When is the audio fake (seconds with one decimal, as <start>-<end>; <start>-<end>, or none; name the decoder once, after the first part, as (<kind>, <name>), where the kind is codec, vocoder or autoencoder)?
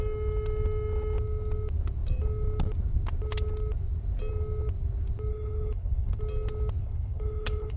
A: 5.3-6.2 (codec, HILCodec); 6.8-7.8